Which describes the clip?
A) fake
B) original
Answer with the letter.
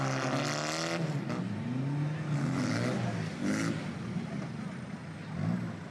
B